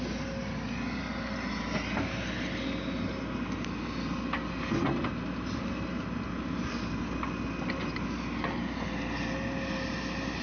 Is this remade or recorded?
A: recorded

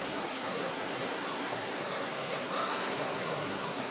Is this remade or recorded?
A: remade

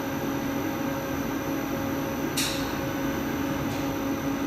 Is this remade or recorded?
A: recorded